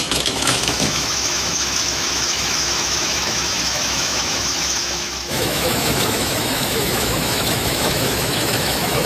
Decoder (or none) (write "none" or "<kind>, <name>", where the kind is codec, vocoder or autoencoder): autoencoder, DAC-VAE